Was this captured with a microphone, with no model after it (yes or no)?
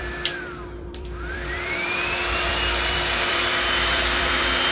no